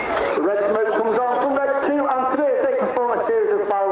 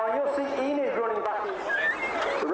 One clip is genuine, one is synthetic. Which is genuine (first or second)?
second